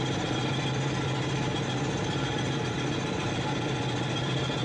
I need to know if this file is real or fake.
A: fake